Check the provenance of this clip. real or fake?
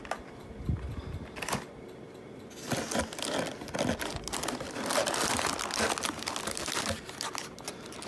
real